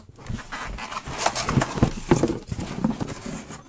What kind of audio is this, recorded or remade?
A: recorded